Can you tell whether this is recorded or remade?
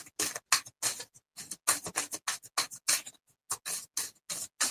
recorded